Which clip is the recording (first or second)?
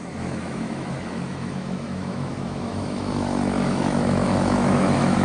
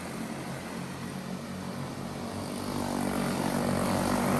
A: second